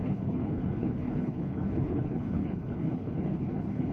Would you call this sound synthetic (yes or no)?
yes